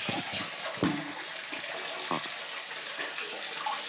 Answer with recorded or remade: recorded